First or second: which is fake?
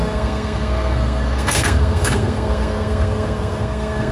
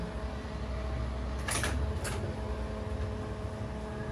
first